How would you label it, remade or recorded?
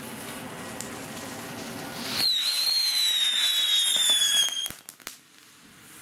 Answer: recorded